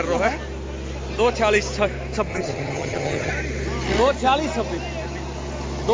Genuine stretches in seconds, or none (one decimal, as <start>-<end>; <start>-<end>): 0.0-2.3; 3.3-5.9